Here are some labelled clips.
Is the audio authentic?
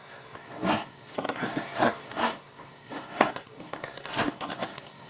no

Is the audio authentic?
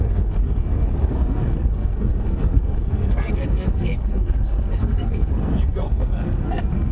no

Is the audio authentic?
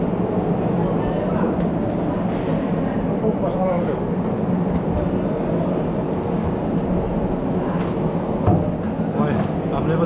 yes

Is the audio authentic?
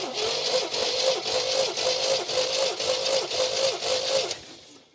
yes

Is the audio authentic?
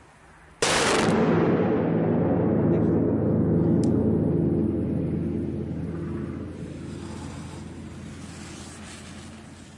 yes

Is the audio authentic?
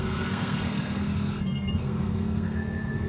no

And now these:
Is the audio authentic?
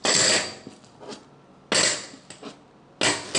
yes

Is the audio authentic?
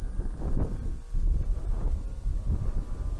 yes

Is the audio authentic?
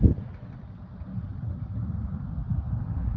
yes